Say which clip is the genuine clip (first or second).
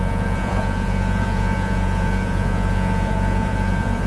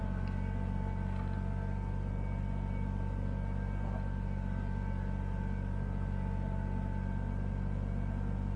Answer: second